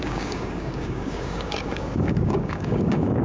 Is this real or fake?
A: fake